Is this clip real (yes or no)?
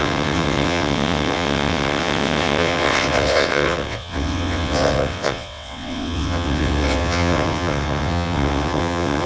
no